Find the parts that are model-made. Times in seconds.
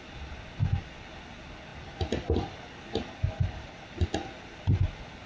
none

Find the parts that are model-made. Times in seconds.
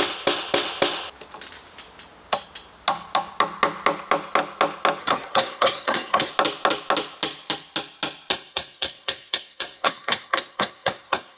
5.0-6.3 (codec, SNAC); 8.3-11.4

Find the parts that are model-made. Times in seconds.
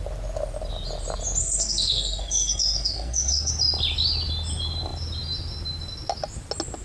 1.4-3.5 (codec, SNAC)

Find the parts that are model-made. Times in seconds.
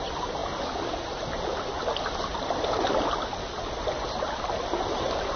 none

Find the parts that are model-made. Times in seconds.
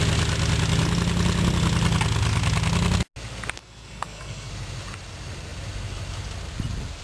3.6-4.5 (codec, SNAC)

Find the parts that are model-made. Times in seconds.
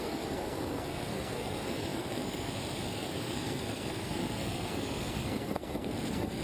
0.0-6.4 (codec, SNAC)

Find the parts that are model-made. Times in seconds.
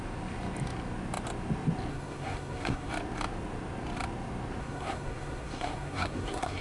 1.9-2.9 (codec, SNAC); 4.6-6.6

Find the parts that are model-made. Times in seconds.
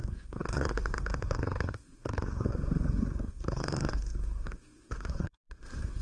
0.0-6.0 (codec, SNAC)